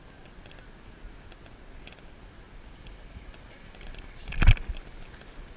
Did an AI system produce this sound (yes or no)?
no